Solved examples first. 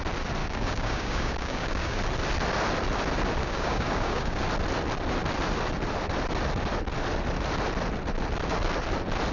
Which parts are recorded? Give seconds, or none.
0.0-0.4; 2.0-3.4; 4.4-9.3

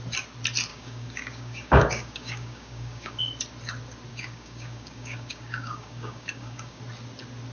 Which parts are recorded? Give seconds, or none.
0.0-0.7; 3.2-4.1; 6.8-7.5

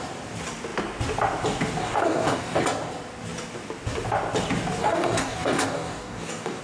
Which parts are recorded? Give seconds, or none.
0.0-1.8; 2.6-4.8

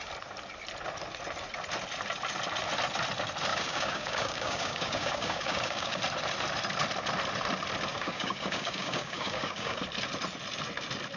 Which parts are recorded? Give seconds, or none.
0.0-3.5; 6.0-7.9; 9.8-11.2

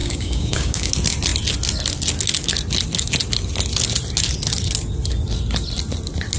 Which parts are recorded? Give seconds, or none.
0.9-6.4

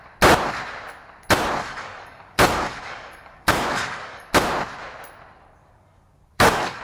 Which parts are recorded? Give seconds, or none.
0.0-1.6; 4.3-5.6